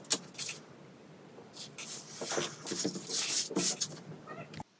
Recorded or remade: recorded